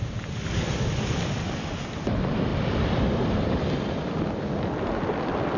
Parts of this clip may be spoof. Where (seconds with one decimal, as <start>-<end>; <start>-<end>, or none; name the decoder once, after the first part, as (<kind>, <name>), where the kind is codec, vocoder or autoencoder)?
none